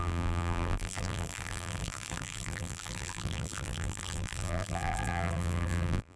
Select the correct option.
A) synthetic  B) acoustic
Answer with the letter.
A